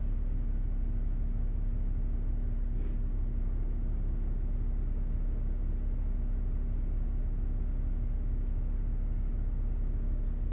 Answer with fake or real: real